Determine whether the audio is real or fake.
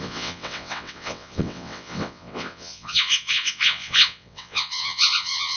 fake